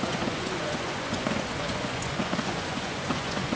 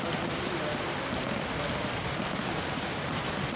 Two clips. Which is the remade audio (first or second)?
first